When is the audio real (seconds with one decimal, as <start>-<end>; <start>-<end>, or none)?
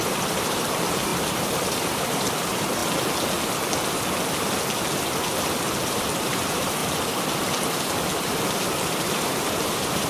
2.8-5.9; 6.8-8.5